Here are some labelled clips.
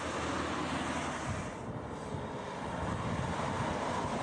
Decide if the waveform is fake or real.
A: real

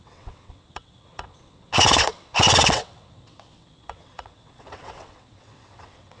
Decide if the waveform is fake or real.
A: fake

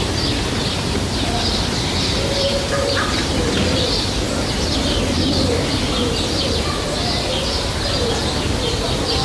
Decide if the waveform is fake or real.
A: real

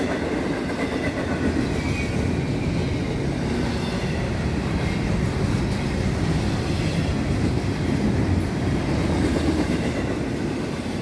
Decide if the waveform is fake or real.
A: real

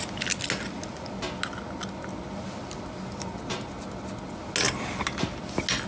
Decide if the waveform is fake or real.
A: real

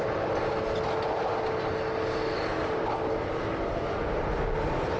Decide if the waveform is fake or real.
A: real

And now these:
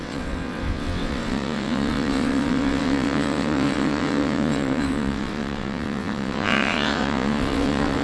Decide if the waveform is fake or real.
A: fake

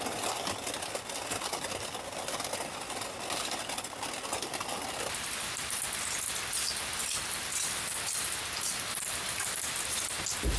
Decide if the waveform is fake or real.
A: real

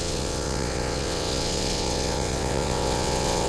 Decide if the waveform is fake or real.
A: fake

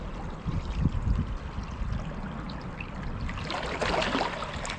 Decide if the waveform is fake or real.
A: real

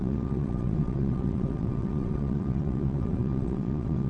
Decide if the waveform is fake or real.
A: fake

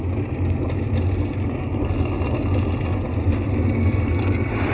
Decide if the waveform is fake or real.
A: real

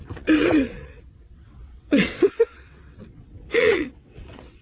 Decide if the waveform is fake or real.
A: fake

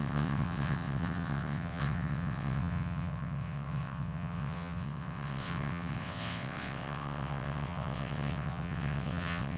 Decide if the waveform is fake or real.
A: fake